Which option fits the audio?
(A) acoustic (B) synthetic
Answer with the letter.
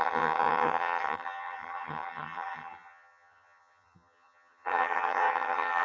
B